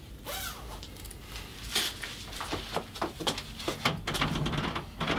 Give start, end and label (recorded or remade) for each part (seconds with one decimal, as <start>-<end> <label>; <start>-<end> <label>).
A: 0.0-5.2 recorded